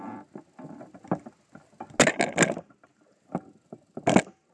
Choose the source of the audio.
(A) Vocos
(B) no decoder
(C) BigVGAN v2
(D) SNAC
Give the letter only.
B